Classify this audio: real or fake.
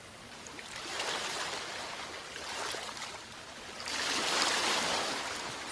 real